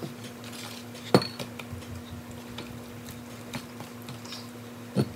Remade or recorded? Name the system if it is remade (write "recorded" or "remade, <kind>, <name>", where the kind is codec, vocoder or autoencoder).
recorded